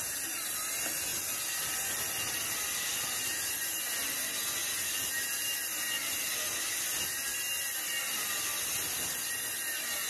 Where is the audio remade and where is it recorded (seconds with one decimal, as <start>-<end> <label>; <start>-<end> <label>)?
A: 0.0-10.1 recorded